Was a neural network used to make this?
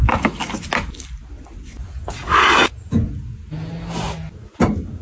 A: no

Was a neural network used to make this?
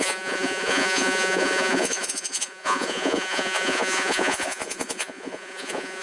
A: yes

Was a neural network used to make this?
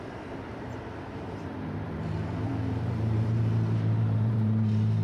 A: yes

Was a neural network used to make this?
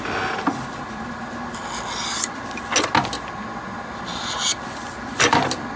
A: no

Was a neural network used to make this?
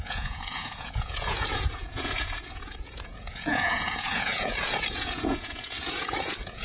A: yes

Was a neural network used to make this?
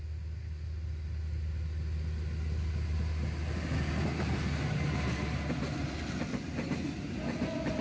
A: no